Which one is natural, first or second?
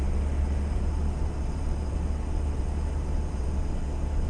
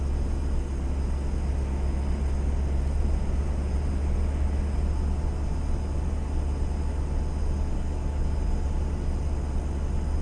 second